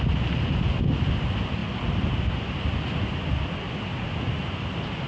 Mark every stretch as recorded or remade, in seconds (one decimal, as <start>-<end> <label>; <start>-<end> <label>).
0.0-5.1 recorded